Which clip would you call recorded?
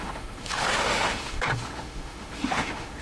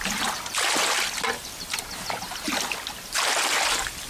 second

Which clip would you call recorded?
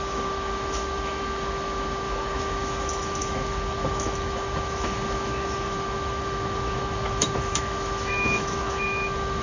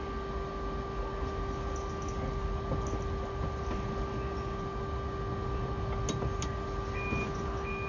second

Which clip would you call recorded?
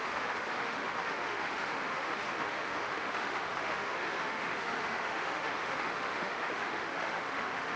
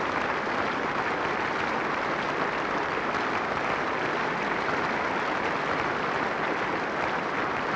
second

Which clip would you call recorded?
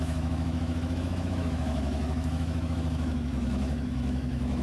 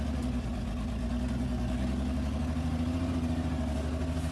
second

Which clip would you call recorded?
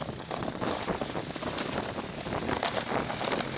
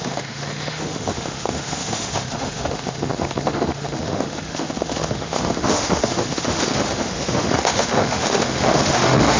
first